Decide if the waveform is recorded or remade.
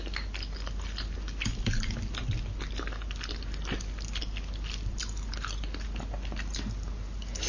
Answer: recorded